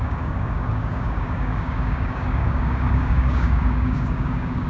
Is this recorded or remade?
remade